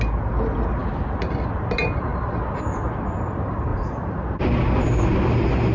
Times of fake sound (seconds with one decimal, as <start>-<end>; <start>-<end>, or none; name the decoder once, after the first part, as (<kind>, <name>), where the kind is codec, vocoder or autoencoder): 2.1-2.6 (vocoder, BigVGAN v2)